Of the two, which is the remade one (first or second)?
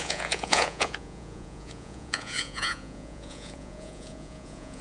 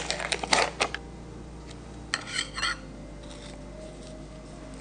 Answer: first